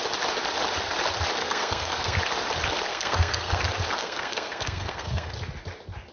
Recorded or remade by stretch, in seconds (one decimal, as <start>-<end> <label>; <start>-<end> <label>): 0.0-1.4 recorded; 1.4-2.2 remade; 2.2-2.9 recorded; 2.9-3.6 remade; 3.6-4.0 recorded; 4.0-5.3 remade; 5.3-6.1 recorded